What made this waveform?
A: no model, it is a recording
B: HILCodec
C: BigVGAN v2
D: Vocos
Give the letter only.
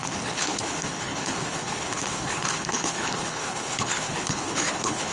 B